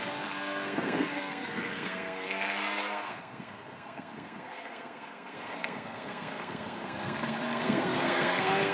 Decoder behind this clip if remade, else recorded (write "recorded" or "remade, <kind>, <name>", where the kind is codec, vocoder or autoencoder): remade, codec, SNAC